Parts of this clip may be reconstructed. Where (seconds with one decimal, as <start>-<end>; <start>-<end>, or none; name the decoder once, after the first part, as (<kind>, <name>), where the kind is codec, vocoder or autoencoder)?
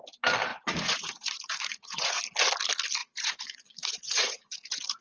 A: 0.5-2.2 (vocoder, Vocos); 3.0-5.0